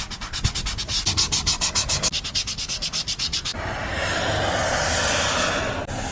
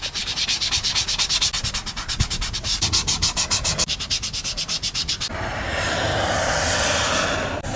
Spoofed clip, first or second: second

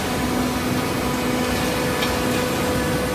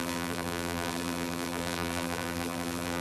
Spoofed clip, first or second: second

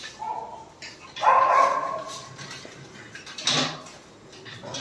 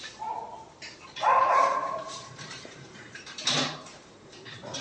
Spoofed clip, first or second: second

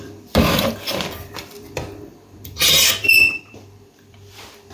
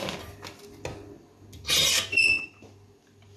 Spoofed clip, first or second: first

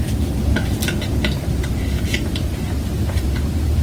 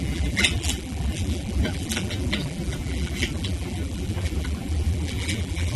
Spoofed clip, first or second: second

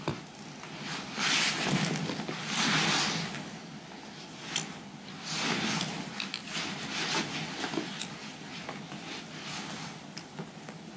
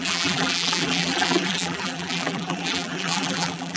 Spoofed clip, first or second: second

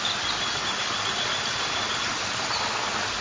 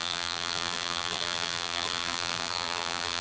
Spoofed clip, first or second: second